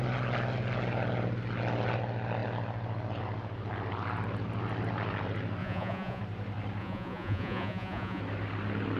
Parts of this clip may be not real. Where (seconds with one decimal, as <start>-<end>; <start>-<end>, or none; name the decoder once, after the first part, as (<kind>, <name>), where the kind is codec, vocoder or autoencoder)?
5.6-6.2 (vocoder, Vocos); 6.8-8.2